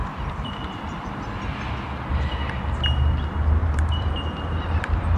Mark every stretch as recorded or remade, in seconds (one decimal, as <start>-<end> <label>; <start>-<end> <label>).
0.0-3.6 recorded; 3.6-4.1 remade; 4.1-5.2 recorded